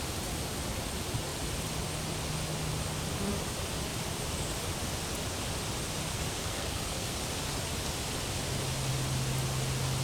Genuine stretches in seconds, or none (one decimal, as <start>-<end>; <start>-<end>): 0.0-6.1; 7.2-10.0

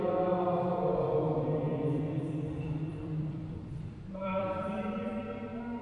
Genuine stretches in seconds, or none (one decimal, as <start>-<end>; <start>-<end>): 0.0-1.7; 5.2-5.8

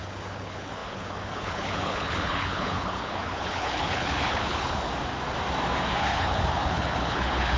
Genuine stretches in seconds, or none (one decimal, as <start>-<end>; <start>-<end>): 4.9-5.9

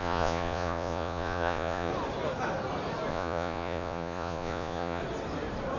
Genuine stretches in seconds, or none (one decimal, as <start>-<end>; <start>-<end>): 1.9-3.1; 5.0-5.8